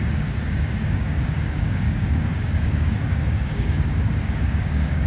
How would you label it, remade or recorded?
remade